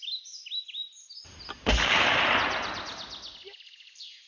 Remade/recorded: recorded